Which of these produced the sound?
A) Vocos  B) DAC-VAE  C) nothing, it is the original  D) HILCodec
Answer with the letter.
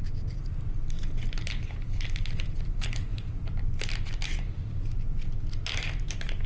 C